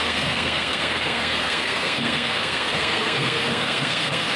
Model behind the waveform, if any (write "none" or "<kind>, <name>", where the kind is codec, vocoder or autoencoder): codec, SNAC